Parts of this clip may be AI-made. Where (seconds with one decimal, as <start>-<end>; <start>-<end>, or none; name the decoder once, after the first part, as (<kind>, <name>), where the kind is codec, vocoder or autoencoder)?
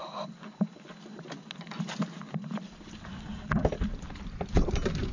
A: none